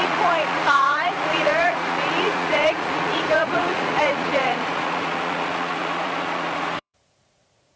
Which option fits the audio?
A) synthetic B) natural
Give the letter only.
A